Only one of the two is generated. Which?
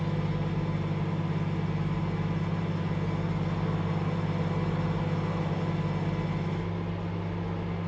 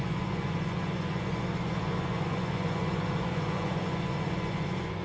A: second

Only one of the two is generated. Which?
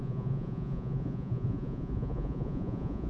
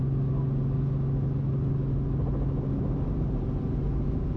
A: first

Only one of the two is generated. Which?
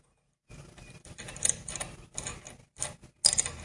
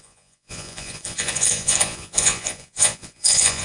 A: second